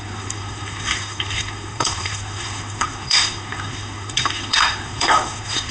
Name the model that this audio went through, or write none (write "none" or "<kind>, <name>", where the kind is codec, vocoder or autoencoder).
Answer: codec, SNAC